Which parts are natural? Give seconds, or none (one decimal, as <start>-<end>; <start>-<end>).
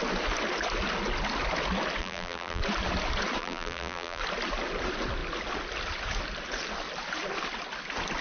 0.0-2.0; 2.6-3.4; 4.2-8.2